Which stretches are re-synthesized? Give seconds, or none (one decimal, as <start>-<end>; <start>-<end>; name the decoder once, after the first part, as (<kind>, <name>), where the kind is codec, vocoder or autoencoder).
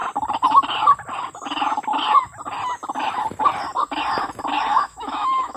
4.7-5.6 (autoencoder, DAC-VAE)